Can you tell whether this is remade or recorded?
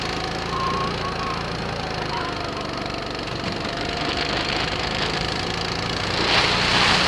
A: recorded